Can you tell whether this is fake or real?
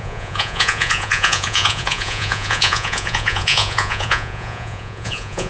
fake